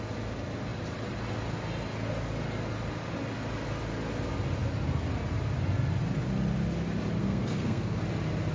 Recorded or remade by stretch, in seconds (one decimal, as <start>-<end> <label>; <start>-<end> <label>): 0.0-7.2 recorded; 7.2-8.0 remade; 8.0-8.5 recorded